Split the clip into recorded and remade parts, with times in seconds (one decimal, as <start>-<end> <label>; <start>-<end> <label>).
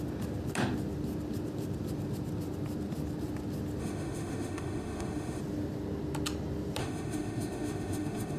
0.0-3.8 recorded; 3.8-5.4 remade; 5.4-6.8 recorded; 6.8-8.4 remade